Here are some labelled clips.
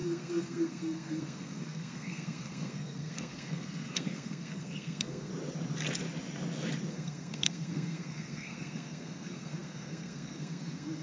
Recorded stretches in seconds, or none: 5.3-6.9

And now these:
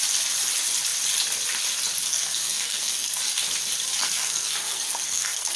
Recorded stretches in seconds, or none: 0.0-2.1; 3.2-4.0

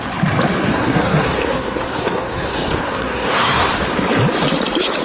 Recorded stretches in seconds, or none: 0.0-0.7; 3.7-5.0

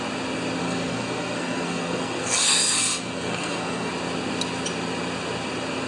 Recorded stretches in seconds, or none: 0.0-0.6; 3.9-5.9

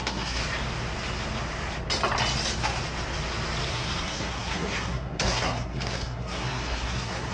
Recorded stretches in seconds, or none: 0.4-3.7

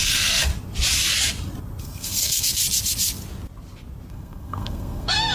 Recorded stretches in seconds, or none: 0.5-1.8; 2.6-4.1

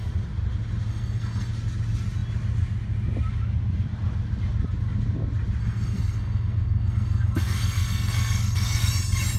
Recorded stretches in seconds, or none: 0.0-0.9; 1.5-5.6; 8.9-9.4